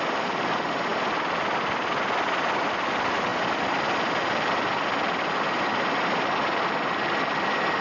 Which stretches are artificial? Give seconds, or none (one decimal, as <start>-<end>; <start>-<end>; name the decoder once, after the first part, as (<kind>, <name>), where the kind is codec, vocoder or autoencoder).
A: none